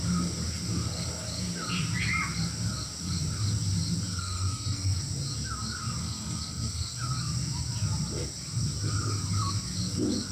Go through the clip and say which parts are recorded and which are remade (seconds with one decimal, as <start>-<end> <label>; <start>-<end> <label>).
0.0-4.1 recorded; 4.1-5.0 remade; 5.0-6.0 recorded; 6.0-7.0 remade; 7.0-10.3 recorded